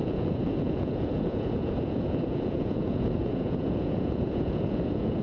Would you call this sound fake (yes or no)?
yes